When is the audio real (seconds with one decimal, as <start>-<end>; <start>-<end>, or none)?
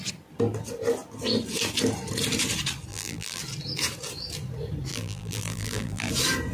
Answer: 0.0-2.9; 3.4-4.9; 6.1-6.5